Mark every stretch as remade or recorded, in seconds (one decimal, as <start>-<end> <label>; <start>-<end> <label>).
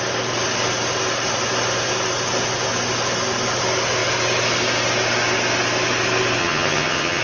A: 0.0-6.4 recorded; 6.4-7.2 remade